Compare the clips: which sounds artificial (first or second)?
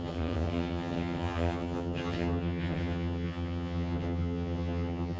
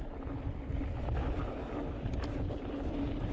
first